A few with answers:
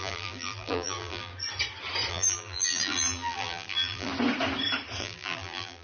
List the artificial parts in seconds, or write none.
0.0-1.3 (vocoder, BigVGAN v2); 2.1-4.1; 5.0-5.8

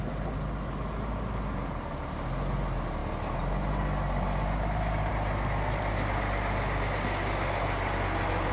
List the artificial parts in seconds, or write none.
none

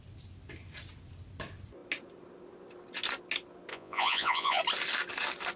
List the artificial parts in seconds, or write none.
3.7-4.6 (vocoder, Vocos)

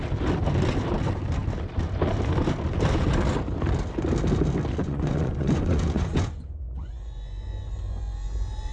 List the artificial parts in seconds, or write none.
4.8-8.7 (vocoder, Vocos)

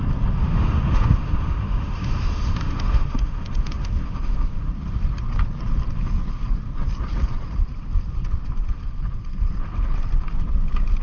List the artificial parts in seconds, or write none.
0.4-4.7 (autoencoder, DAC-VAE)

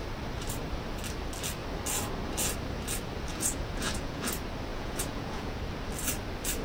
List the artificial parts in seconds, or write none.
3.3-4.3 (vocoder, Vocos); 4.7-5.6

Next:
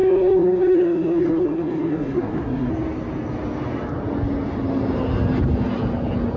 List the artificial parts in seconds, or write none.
0.0-2.7 (codec, SNAC)

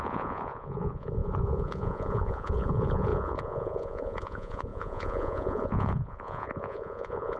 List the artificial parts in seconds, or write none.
0.0-7.4 (vocoder, Vocos)